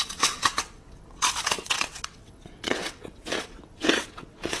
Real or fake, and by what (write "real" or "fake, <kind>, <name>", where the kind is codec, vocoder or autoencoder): fake, vocoder, WaveNeXt